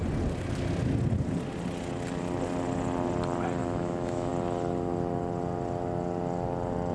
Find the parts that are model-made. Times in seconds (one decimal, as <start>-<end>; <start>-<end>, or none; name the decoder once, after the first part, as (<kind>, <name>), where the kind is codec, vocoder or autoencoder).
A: 3.6-4.3 (autoencoder, DAC-VAE)